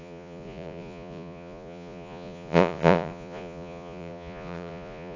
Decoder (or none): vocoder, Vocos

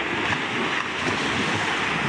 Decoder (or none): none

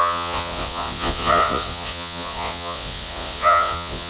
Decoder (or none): vocoder, Vocos